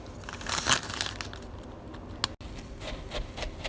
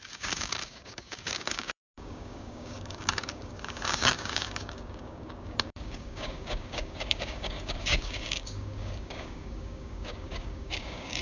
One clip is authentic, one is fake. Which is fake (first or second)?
second